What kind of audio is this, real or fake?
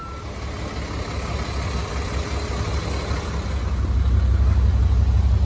real